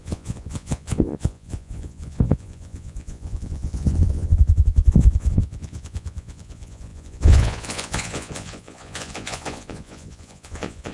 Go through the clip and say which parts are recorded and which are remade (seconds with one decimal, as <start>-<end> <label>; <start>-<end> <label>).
0.0-10.9 remade

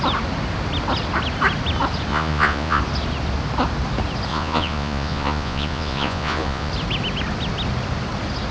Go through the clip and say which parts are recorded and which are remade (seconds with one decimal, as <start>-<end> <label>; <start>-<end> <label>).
0.0-2.1 recorded; 2.1-2.8 remade; 2.8-4.3 recorded; 4.3-6.7 remade; 6.7-8.5 recorded

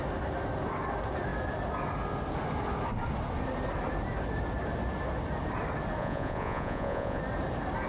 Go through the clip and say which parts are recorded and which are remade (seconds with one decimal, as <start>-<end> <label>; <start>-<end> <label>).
0.0-6.0 recorded; 6.0-7.2 remade; 7.2-7.9 recorded

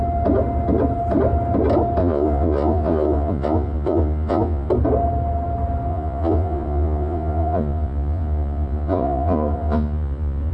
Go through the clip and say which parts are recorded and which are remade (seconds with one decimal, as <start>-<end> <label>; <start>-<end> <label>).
0.0-2.0 recorded; 2.0-4.7 remade; 4.7-5.9 recorded; 5.9-10.5 remade

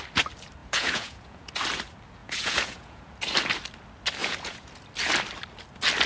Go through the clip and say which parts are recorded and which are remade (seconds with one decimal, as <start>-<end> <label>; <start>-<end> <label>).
0.0-0.6 recorded; 0.6-1.5 remade; 1.5-2.2 recorded; 2.2-3.1 remade; 3.1-4.2 recorded; 4.2-4.7 remade; 4.7-6.1 recorded

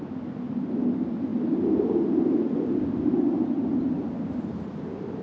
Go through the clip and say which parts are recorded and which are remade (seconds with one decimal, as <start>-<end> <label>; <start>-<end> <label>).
0.0-5.2 recorded

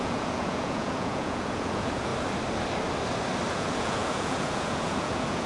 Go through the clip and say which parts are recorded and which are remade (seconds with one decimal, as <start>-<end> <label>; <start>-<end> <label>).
0.0-2.1 remade; 2.1-3.5 recorded; 3.5-5.5 remade